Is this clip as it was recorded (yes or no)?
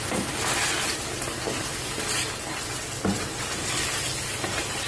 yes